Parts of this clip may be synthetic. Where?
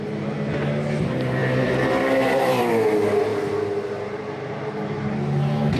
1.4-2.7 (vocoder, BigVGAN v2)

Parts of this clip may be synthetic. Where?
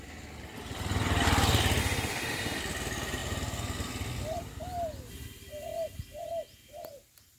1.8-2.6 (autoencoder, DAC-VAE)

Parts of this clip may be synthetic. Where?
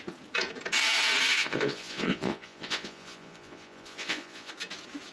1.4-4.5 (vocoder, Vocos)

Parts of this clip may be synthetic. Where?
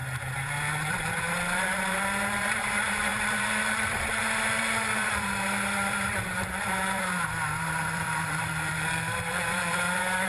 0.9-10.3 (vocoder, BigVGAN v2)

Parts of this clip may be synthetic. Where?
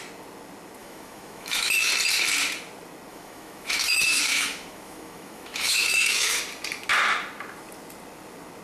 0.8-1.9 (autoencoder, DAC-VAE); 3.1-6.4